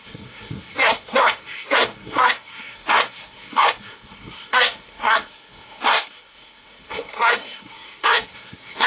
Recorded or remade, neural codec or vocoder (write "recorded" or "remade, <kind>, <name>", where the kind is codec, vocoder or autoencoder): remade, codec, SNAC